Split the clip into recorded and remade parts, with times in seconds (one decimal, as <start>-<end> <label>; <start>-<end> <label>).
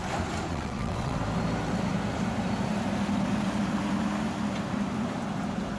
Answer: 0.0-0.5 recorded; 0.5-1.2 remade; 1.2-5.8 recorded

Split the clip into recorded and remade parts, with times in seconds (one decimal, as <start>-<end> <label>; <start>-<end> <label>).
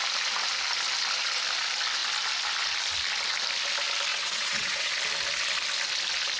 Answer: 0.0-4.1 recorded; 4.1-4.9 remade; 4.9-6.4 recorded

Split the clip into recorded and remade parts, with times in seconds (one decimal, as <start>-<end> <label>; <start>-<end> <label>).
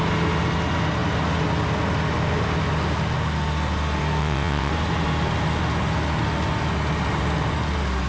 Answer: 0.0-4.2 recorded; 4.2-4.7 remade; 4.7-8.1 recorded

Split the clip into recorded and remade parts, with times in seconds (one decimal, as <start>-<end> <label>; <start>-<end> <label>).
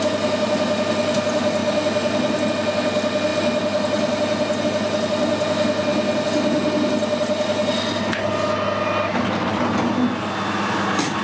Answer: 0.0-11.2 recorded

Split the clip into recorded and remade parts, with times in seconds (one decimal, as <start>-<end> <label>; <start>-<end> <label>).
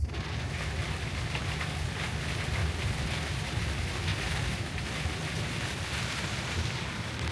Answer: 0.0-7.3 recorded